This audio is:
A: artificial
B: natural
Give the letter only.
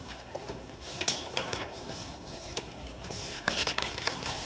A